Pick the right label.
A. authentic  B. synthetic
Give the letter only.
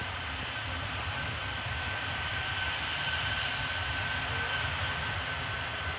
A